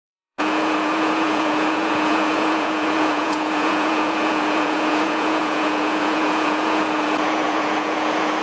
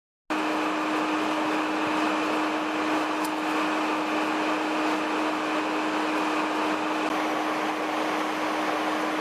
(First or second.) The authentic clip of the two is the second